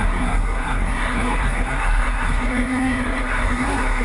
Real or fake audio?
fake